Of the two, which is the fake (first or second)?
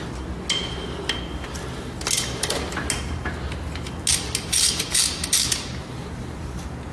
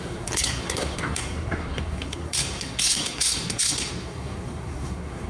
second